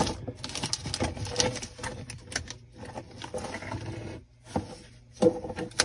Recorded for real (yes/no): yes